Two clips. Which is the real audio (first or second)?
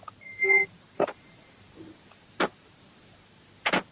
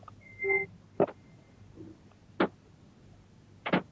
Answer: second